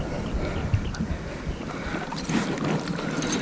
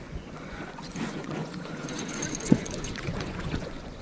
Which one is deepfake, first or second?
second